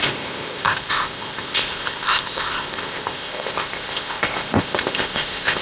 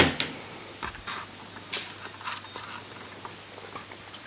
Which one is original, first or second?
second